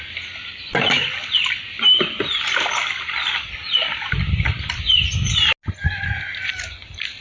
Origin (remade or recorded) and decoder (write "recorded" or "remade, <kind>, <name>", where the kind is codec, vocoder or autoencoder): recorded